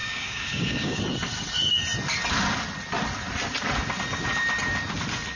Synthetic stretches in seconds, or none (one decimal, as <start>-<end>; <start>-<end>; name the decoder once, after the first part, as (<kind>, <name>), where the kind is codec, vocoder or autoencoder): 0.0-1.0 (codec, DAC)